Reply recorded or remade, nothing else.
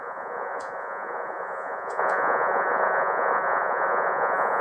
remade